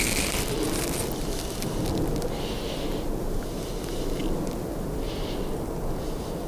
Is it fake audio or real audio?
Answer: real